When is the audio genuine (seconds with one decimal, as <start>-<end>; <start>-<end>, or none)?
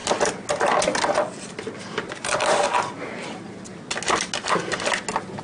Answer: 0.0-5.4